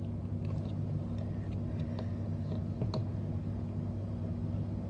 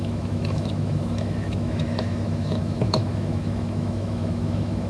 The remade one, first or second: second